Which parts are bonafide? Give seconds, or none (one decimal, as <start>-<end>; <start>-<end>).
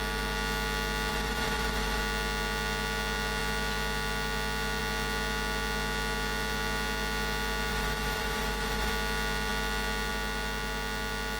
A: 0.0-1.1; 2.0-7.7; 8.9-11.4